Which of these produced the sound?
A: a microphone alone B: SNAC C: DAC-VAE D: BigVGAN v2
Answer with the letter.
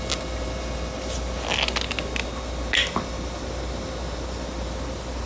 A